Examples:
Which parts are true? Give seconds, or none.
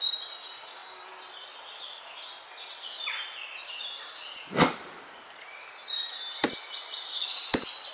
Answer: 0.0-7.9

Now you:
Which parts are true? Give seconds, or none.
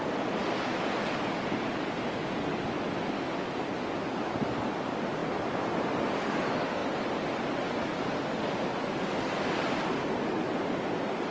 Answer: 0.0-11.3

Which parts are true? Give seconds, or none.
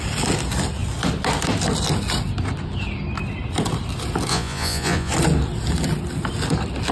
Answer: 0.0-4.3; 5.1-6.9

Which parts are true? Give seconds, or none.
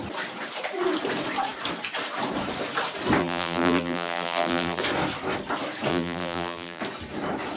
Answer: 0.0-3.2; 4.8-5.9; 6.8-7.6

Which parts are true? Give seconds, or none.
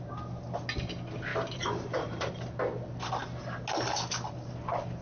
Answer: 0.0-1.3; 2.3-5.0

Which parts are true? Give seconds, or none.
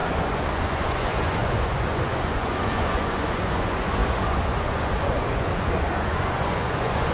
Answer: none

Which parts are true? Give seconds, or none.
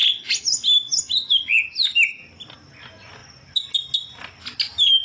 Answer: 0.0-5.0